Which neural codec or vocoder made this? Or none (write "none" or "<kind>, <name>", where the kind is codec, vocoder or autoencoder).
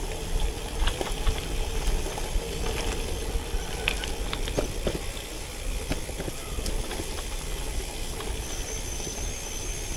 none